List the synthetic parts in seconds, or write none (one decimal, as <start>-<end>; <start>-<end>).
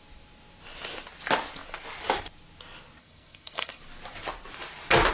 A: 3.0-3.8